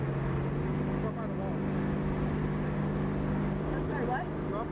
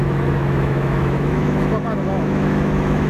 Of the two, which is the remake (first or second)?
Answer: second